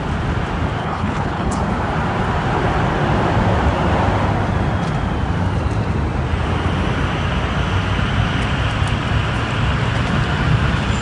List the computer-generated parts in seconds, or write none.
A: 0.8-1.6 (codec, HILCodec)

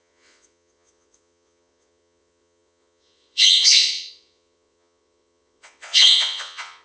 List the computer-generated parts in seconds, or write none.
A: 0.0-6.8 (vocoder, Vocos)

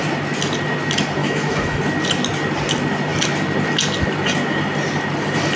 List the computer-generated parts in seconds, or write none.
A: 1.2-1.8 (autoencoder, DAC-VAE)

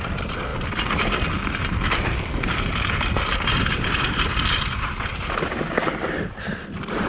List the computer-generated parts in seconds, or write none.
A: 0.0-0.5 (vocoder, BigVGAN v2); 3.7-7.1

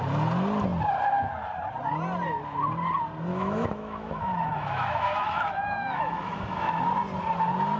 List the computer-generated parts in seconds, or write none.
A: 3.3-6.9 (autoencoder, DAC-VAE)